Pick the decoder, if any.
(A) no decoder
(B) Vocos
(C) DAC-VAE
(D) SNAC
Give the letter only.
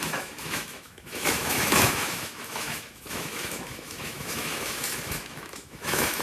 C